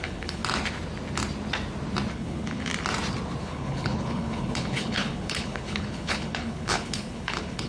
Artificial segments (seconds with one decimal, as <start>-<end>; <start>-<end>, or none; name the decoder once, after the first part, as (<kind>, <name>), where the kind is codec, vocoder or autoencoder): 0.0-0.4 (codec, HILCodec); 2.1-2.7; 3.4-7.7